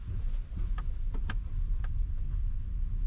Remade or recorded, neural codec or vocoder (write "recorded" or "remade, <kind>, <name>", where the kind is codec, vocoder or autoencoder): recorded